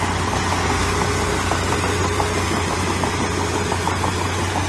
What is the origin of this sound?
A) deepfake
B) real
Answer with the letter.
B